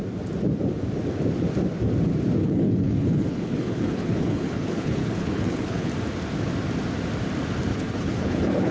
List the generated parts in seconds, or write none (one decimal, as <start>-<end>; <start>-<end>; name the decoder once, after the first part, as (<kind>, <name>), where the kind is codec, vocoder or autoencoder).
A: 2.4-5.9 (codec, HILCodec); 7.7-8.7